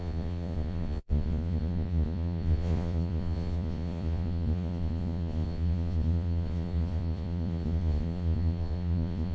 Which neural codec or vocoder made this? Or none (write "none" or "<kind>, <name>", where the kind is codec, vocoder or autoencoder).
vocoder, Vocos